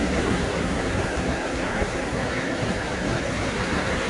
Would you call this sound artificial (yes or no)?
yes